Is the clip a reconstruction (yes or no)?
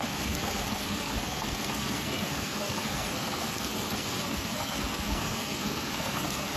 yes